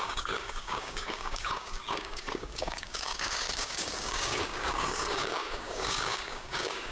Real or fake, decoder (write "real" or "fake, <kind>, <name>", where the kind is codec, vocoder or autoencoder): fake, codec, DAC